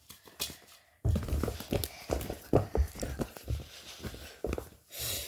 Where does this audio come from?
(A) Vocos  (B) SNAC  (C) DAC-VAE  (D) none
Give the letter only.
D